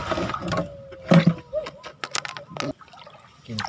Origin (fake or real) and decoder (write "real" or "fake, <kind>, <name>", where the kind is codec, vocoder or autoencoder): real